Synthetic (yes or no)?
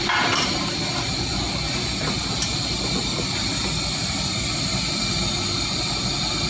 no